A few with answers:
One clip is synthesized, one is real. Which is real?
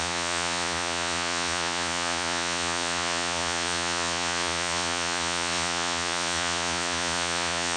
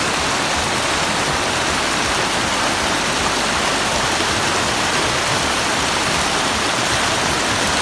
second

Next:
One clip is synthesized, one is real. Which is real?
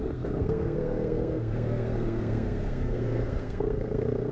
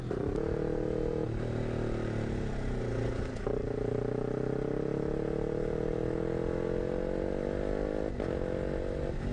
second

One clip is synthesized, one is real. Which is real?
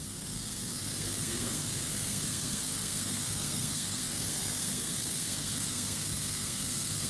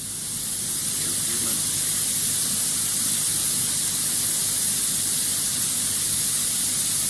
second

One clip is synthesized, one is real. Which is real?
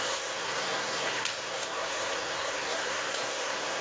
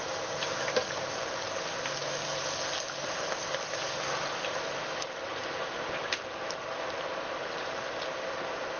second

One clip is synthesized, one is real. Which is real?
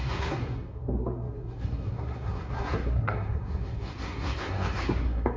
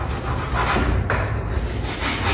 second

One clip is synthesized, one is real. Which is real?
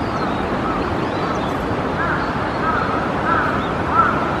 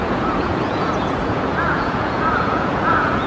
first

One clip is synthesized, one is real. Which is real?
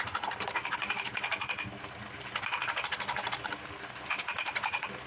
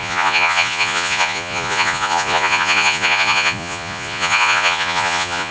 first